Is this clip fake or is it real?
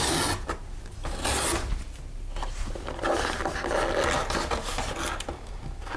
real